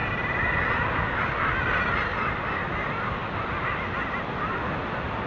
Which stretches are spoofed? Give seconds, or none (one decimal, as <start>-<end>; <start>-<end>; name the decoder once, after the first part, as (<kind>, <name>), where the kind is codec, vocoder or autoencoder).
none